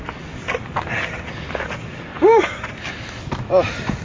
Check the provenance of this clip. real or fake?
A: real